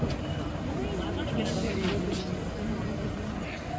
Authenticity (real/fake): real